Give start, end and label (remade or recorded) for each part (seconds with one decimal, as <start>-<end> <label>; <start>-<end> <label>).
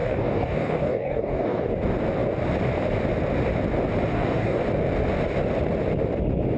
0.0-1.7 remade; 1.7-4.1 recorded; 4.1-4.6 remade; 4.6-6.6 recorded